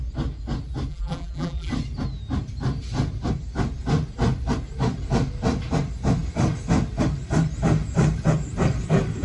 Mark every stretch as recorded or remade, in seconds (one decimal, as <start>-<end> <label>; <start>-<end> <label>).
0.0-0.9 recorded; 0.9-1.7 remade; 1.7-9.2 recorded